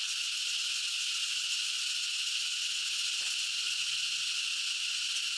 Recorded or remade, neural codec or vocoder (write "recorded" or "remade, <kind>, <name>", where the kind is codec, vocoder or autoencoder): recorded